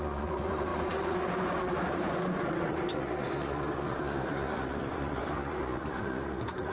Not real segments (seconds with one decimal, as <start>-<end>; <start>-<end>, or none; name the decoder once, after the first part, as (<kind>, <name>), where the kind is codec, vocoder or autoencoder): 0.0-6.7 (vocoder, Vocos)